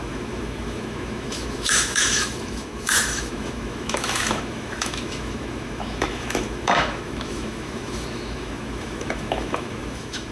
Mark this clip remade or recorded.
remade